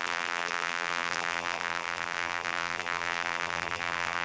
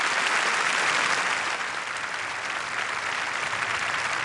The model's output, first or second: first